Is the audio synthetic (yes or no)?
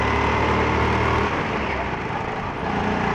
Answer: no